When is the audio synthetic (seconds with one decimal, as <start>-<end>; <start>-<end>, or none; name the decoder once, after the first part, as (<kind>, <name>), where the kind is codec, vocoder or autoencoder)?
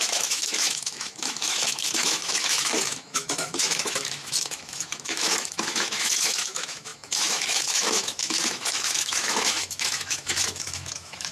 0.0-11.3 (autoencoder, DAC-VAE)